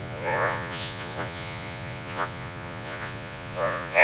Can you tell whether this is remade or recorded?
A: remade